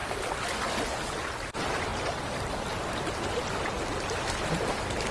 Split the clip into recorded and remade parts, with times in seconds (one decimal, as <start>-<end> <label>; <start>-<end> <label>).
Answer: 0.0-5.1 recorded